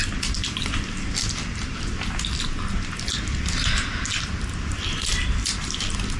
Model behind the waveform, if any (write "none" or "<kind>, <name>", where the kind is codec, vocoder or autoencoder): none